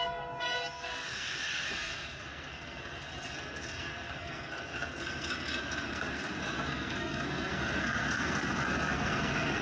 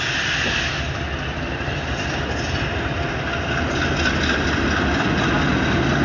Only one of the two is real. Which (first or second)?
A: second